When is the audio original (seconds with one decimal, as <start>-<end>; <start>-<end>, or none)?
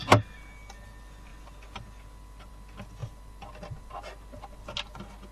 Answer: 0.0-5.3